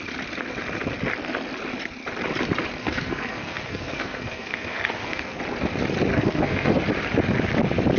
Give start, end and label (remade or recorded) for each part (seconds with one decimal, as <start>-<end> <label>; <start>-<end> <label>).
0.0-2.8 recorded; 2.8-5.4 remade; 5.4-6.1 recorded; 6.1-6.8 remade; 6.8-8.0 recorded